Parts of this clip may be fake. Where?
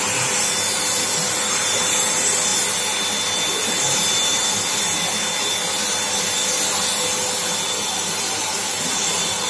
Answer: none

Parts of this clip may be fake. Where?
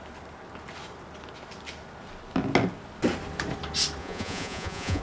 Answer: 4.0-5.0 (vocoder, Vocos)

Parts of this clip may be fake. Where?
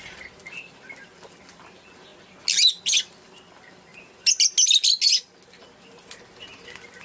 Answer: none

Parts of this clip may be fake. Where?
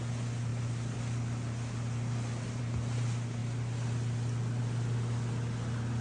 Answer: none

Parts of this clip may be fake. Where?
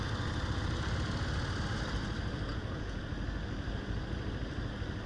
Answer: 2.5-3.0 (vocoder, Vocos)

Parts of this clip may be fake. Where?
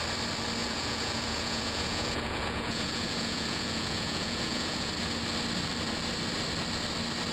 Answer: 0.6-4.9 (vocoder, Vocos)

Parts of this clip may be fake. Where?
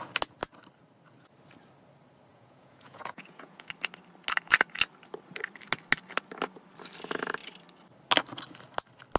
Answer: 2.3-3.7 (vocoder, Vocos)